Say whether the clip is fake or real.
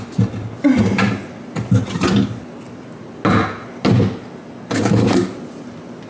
real